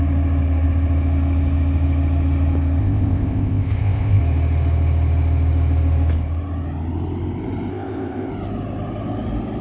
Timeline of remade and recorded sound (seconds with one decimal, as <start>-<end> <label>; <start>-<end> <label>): 0.0-2.8 recorded; 2.8-4.2 remade; 4.2-7.7 recorded; 7.7-8.3 remade; 8.3-9.6 recorded